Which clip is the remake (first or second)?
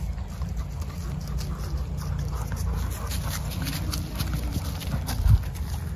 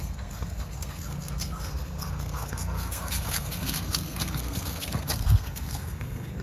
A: second